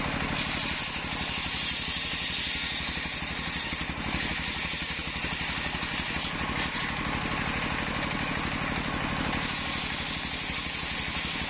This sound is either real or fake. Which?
real